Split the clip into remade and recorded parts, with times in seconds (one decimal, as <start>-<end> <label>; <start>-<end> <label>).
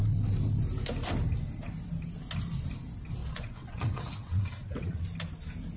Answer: 0.0-3.2 recorded; 3.2-5.0 remade; 5.0-5.8 recorded